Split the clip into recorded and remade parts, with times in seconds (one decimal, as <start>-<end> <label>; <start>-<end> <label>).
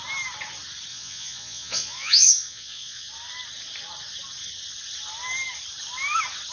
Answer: 0.0-0.9 recorded; 0.9-3.1 remade; 3.1-6.5 recorded